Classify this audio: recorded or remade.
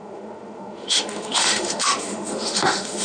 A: remade